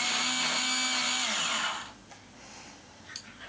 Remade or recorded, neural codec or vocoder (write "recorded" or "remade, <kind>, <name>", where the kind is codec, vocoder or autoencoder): recorded